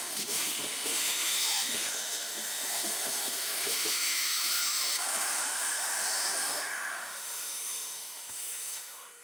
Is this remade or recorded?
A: remade